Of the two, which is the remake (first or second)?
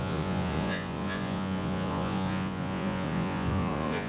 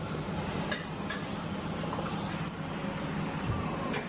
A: first